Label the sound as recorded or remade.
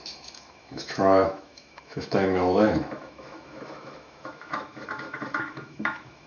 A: remade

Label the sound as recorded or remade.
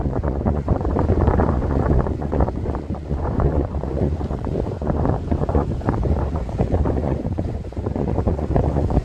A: remade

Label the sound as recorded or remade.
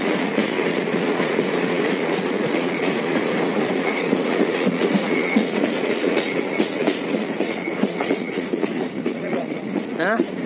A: remade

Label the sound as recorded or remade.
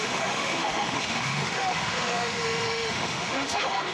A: remade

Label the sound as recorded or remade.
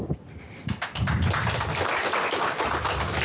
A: recorded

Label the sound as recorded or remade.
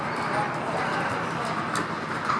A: recorded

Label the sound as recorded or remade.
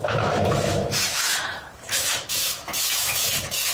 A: remade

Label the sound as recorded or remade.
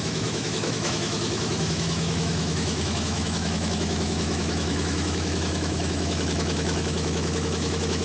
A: remade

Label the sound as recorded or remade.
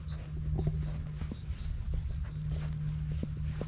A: recorded